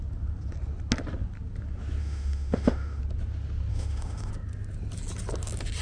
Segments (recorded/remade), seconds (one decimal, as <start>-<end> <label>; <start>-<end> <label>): 0.0-2.0 recorded; 2.0-3.0 remade; 3.0-3.7 recorded; 3.7-4.3 remade; 4.3-5.8 recorded